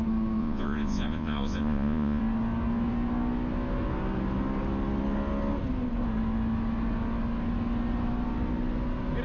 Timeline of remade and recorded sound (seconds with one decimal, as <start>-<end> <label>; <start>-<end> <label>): 0.0-0.4 recorded; 0.4-2.2 remade; 2.2-9.2 recorded